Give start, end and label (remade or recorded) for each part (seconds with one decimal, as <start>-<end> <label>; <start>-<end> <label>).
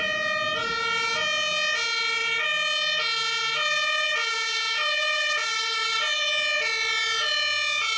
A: 0.0-4.3 recorded; 4.3-4.8 remade; 4.8-8.0 recorded